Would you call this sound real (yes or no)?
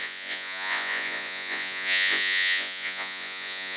no